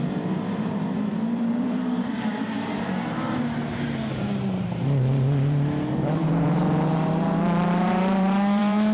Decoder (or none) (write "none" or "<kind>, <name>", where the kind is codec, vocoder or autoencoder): vocoder, BigVGAN v2